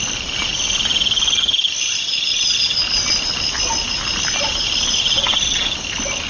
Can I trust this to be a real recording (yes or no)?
yes